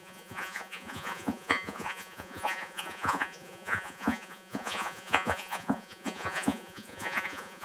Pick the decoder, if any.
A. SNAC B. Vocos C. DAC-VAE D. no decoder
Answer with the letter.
B